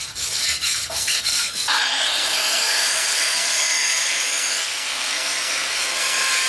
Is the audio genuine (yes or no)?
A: no